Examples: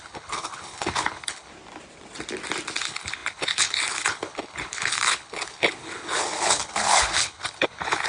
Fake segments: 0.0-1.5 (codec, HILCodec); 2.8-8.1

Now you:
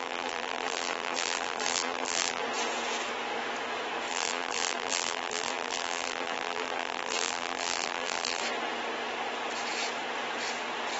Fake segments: 0.0-2.4 (vocoder, BigVGAN v2); 4.1-8.4

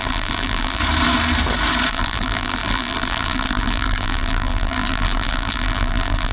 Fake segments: 0.0-0.8 (vocoder, BigVGAN v2); 1.9-6.3

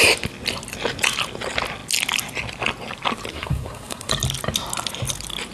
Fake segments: 3.3-4.1 (codec, SNAC)

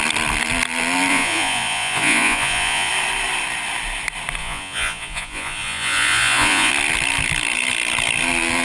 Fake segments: 1.1-2.9 (vocoder, Vocos); 4.4-6.7

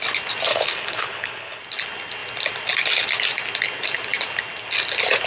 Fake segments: 0.5-1.6 (codec, HILCodec)

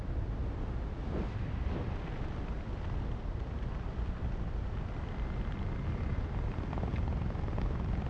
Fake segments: none